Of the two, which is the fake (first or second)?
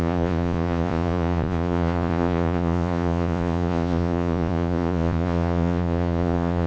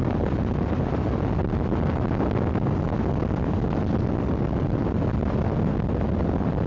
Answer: first